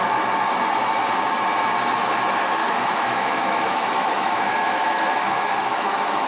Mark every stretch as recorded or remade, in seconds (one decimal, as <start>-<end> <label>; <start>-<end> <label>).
0.0-2.6 recorded; 2.6-6.3 remade